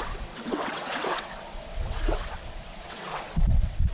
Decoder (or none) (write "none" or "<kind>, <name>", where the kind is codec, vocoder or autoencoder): vocoder, WaveNeXt